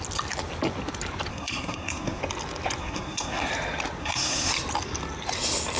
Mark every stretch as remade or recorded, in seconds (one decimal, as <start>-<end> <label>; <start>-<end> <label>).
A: 0.0-1.3 recorded; 1.3-2.2 remade; 2.2-2.8 recorded; 2.8-3.5 remade; 3.5-4.0 recorded; 4.0-4.5 remade; 4.5-5.8 recorded